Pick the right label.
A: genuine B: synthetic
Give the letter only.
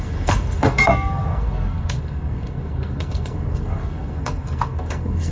B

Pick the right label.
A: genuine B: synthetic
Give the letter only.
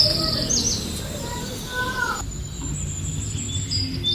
A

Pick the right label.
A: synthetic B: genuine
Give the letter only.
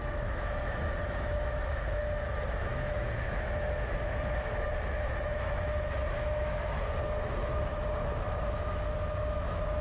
A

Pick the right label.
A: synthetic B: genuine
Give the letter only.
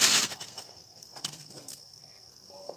A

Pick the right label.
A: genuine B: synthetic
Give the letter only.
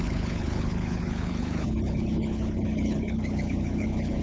B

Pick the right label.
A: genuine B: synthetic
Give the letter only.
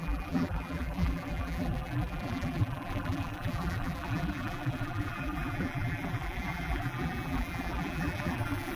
B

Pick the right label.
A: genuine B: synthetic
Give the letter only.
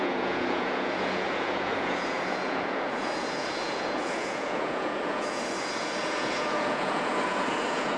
B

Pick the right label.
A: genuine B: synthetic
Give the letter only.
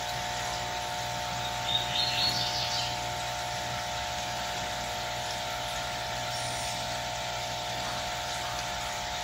A